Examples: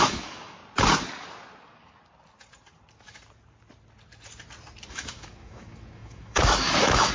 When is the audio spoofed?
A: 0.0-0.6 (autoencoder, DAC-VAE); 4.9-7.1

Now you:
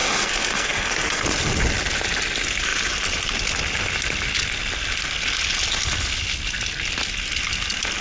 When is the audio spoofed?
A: 0.0-1.2 (codec, SNAC)

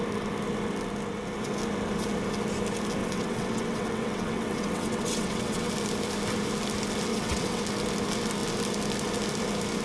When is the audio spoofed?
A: 3.0-5.7 (vocoder, WaveNeXt); 7.1-7.6

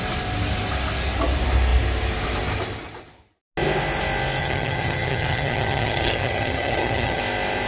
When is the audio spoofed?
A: 4.4-7.2 (vocoder, HiFi-GAN)

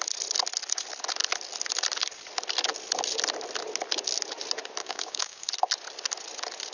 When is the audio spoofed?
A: 4.8-5.5 (codec, DAC)

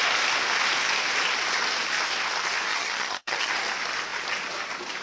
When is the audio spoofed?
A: 2.7-3.5 (vocoder, HiFi-GAN)